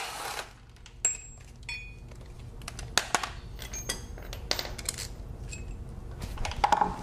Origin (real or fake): real